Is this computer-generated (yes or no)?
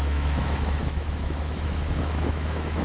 yes